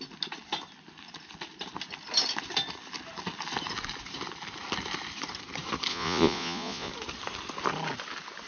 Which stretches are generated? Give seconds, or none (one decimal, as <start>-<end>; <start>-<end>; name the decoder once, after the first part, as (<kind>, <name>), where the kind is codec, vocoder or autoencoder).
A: 5.9-6.9 (vocoder, Vocos)